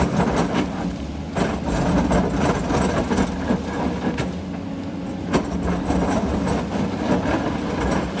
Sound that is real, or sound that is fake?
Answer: real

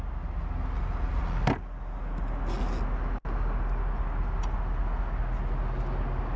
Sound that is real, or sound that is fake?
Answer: real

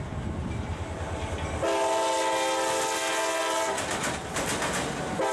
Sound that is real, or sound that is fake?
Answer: real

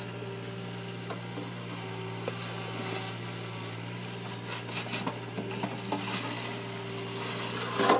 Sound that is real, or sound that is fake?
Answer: real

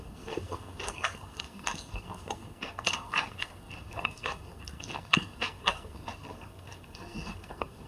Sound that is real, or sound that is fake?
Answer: fake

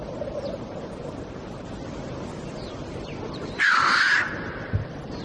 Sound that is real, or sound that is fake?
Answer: real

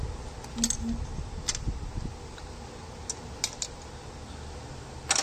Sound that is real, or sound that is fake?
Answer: real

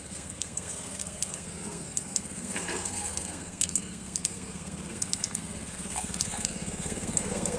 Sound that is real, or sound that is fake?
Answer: fake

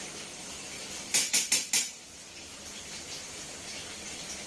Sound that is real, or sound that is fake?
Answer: real